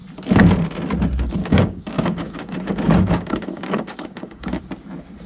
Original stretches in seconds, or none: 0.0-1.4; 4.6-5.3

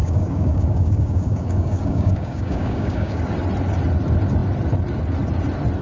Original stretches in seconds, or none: 3.2-5.8

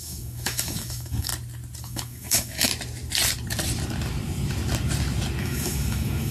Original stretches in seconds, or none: 1.3-1.8; 2.7-5.4